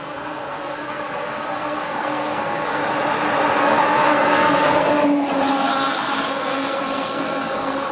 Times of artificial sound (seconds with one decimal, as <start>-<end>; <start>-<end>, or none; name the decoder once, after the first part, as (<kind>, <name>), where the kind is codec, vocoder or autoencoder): 0.0-2.8 (codec, SNAC); 3.6-5.0; 5.5-7.9